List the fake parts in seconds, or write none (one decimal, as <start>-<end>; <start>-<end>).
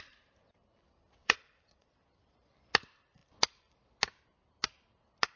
1.2-2.5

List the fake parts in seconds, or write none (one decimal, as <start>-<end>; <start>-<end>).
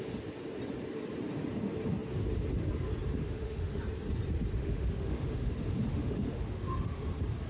3.2-3.8; 4.6-5.5; 5.9-7.0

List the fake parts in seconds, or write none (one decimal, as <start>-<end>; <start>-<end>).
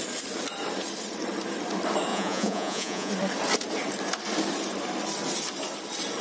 2.1-3.1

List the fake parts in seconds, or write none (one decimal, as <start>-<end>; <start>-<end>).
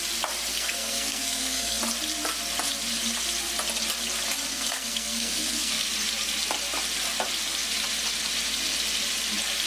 0.5-1.8; 4.5-5.9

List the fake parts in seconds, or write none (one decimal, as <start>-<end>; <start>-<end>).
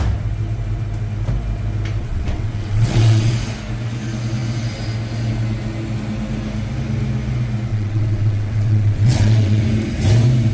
2.0-3.3; 7.7-9.6